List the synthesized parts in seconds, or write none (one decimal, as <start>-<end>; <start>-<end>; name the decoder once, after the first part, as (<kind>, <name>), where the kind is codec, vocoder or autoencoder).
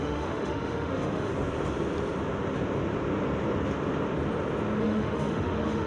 0.0-1.3 (autoencoder, DAC-VAE); 4.8-5.9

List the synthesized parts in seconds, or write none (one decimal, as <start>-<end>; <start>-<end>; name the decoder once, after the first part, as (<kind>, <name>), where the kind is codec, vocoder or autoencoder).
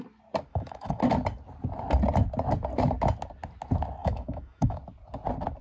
0.5-1.0 (autoencoder, DAC-VAE); 4.0-4.8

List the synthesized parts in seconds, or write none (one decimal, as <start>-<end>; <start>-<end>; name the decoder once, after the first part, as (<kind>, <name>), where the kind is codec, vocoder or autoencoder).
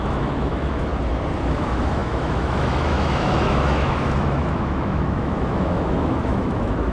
0.0-0.9 (autoencoder, DAC-VAE); 1.4-6.9